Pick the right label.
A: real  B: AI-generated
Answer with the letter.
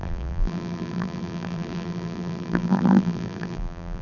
B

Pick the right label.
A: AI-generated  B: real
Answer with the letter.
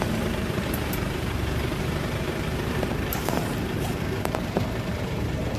A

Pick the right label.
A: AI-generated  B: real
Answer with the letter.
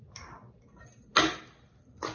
B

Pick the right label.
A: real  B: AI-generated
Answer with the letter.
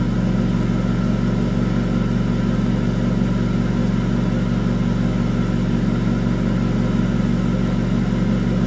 A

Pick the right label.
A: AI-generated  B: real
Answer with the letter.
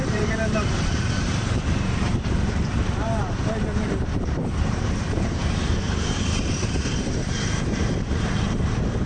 A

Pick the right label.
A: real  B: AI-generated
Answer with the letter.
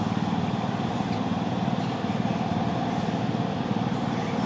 B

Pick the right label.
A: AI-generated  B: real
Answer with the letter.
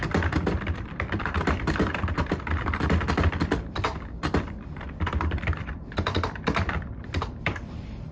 A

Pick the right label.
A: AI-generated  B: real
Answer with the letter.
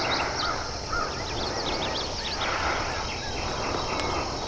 B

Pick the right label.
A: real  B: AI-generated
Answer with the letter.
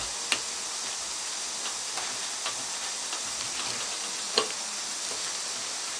A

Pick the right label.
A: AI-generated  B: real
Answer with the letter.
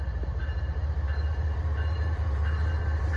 A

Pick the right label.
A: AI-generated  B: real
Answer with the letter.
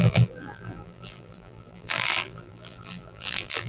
A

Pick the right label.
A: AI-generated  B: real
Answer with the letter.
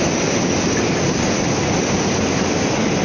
B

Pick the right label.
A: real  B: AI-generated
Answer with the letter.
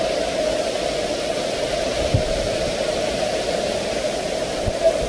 A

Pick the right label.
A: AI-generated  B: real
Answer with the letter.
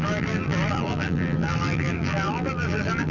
A